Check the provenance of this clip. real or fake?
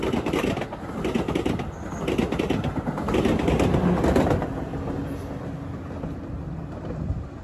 real